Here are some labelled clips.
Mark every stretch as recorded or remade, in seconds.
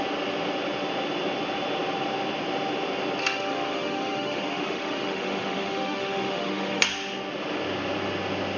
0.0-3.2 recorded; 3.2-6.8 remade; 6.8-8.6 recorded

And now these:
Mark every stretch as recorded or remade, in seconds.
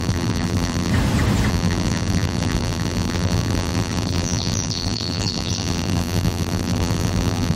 0.0-0.9 remade; 0.9-1.5 recorded; 1.5-7.6 remade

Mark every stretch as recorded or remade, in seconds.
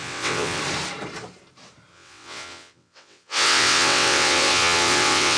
0.0-0.6 remade; 0.6-1.9 recorded; 1.9-5.4 remade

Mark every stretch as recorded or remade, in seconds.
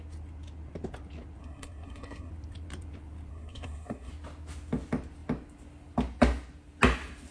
0.0-1.4 recorded; 1.4-2.3 remade; 2.3-3.3 recorded; 3.3-4.1 remade; 4.1-7.3 recorded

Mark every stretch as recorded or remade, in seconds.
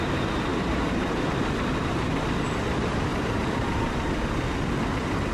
0.0-0.5 recorded; 0.5-2.2 remade; 2.2-3.1 recorded; 3.1-4.3 remade; 4.3-5.3 recorded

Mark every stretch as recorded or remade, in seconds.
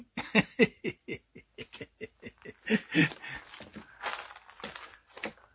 0.0-5.5 recorded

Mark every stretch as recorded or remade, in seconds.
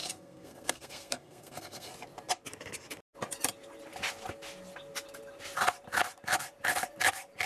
0.0-1.9 remade; 1.9-7.5 recorded